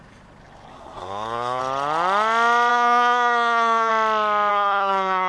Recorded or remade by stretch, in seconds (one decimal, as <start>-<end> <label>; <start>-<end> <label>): 0.0-0.7 recorded; 0.7-1.6 remade; 1.6-2.7 recorded; 2.7-3.9 remade; 3.9-4.5 recorded; 4.5-5.3 remade